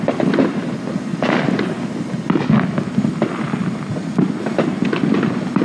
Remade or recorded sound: recorded